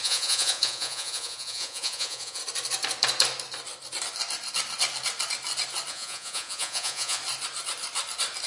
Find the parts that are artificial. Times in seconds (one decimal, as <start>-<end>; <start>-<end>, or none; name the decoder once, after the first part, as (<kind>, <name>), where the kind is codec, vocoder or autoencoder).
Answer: 0.0-2.4 (vocoder, Vocos); 5.9-7.2